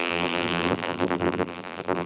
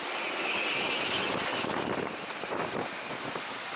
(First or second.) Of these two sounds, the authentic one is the second